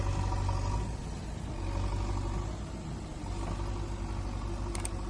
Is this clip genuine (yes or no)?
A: yes